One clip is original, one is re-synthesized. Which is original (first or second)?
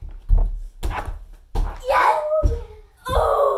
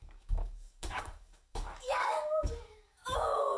first